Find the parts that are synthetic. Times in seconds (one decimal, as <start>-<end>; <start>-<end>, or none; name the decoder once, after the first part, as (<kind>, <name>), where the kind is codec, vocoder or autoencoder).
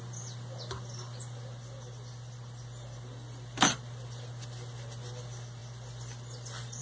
none